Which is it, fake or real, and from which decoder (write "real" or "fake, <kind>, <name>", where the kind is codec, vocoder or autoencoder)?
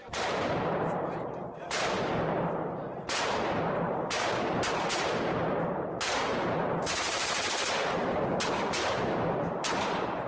fake, vocoder, BigVGAN v2